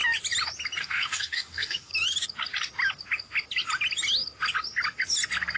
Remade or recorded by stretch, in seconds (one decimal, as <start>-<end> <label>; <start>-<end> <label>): 0.0-0.8 recorded; 0.8-1.9 remade; 1.9-5.6 recorded